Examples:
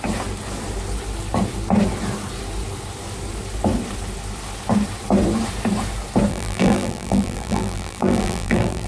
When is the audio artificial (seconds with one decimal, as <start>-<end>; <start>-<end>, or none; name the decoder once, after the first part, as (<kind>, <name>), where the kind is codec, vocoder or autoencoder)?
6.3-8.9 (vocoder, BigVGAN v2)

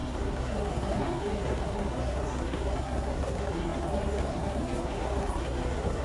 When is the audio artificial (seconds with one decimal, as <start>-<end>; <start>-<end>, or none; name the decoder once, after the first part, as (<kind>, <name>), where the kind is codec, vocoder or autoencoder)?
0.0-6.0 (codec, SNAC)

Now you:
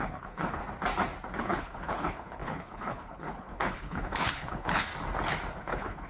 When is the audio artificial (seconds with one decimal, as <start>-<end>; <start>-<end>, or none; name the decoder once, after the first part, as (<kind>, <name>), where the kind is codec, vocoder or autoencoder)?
0.0-0.6 (codec, HILCodec); 1.4-4.9; 5.6-6.1

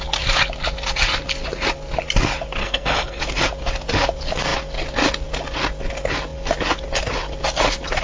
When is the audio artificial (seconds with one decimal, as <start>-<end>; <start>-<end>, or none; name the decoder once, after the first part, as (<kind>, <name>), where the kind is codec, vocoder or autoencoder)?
2.6-3.2 (codec, SNAC)

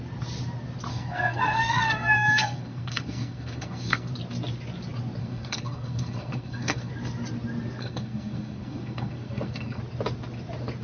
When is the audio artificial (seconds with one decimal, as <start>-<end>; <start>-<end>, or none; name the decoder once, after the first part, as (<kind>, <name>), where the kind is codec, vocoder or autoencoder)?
0.9-4.1 (codec, SNAC); 5.2-6.9; 7.8-9.8

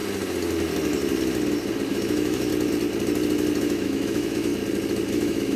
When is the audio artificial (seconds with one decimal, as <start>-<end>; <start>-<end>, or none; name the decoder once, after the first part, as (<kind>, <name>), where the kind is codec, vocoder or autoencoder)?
1.9-2.5 (autoencoder, DAC-VAE); 3.6-4.5; 5.1-5.6